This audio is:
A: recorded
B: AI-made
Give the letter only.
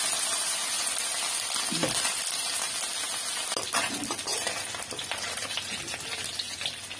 A